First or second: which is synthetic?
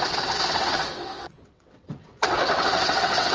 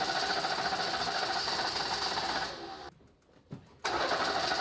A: first